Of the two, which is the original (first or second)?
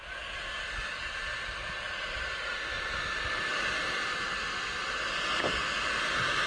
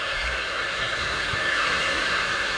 first